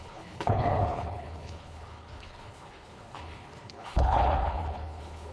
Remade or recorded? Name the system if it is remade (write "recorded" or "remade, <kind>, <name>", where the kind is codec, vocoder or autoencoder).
remade, codec, HILCodec